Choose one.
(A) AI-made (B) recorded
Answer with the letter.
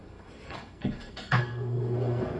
A